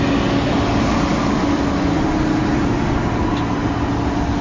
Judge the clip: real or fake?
real